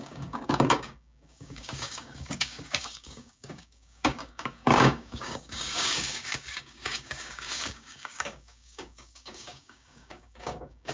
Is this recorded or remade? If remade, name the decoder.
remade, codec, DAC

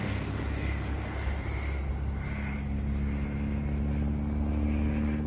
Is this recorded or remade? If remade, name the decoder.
recorded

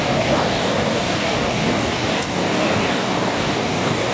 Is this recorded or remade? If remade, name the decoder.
remade, codec, DAC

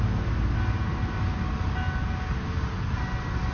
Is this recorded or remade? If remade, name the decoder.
recorded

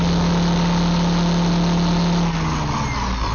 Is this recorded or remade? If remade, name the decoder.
recorded